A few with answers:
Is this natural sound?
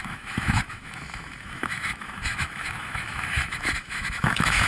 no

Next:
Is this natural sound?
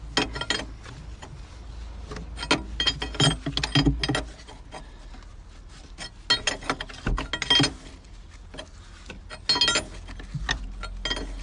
yes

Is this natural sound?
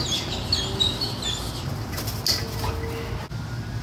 yes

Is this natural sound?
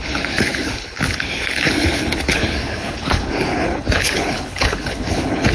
no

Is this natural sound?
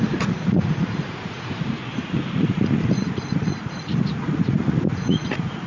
no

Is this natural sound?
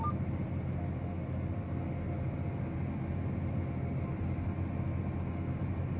yes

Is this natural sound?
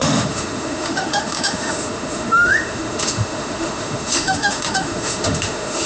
no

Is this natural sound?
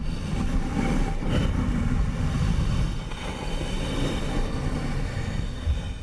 yes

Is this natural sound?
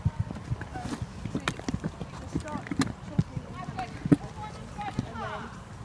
yes